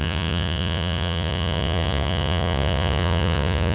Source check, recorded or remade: remade